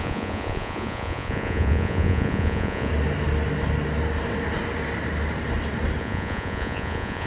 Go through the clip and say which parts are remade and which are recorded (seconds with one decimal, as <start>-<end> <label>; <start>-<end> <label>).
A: 0.0-2.9 remade; 2.9-6.0 recorded; 6.0-7.3 remade